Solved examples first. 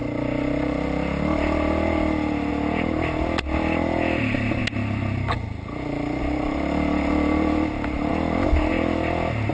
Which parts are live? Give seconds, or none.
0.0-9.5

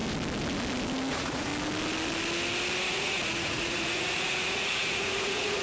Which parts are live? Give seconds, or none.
0.0-1.1; 1.5-2.9

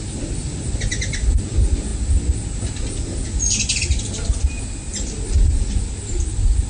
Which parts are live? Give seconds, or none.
0.0-6.7

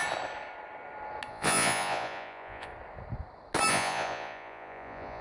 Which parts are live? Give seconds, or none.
0.0-1.3; 2.7-3.7

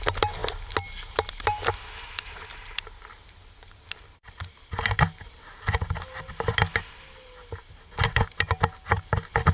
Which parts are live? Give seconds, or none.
0.0-9.5

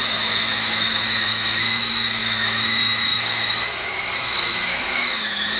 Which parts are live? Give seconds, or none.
none

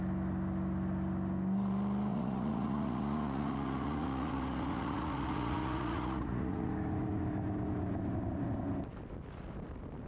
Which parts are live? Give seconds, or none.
0.0-2.1; 6.7-10.1